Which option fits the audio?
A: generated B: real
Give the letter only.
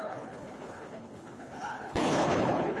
A